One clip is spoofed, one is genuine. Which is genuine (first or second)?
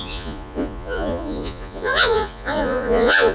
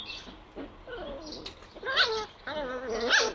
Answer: second